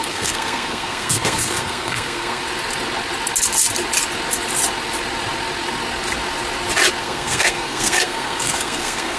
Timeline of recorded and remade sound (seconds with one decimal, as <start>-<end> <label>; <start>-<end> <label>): 0.0-2.4 remade; 2.4-7.0 recorded; 7.0-9.2 remade